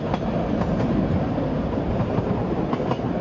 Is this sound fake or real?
real